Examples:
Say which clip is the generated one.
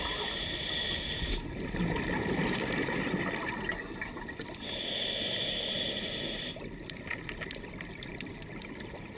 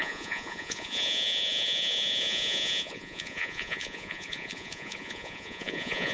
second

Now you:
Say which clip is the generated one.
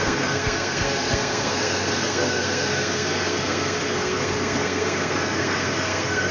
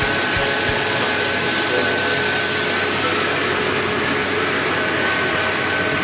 first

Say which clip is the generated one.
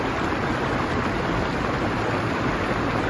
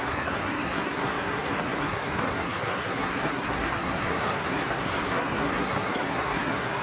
second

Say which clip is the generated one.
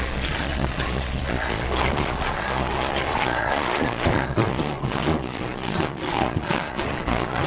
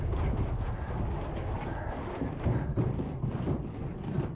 first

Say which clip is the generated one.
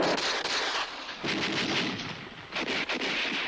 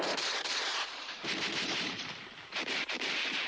second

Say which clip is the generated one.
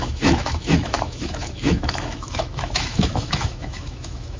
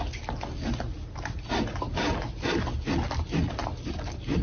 first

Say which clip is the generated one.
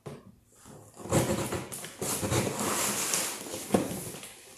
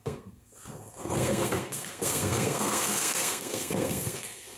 second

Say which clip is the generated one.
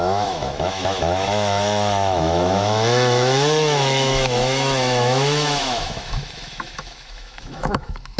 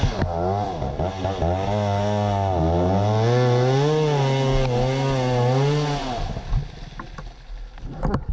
first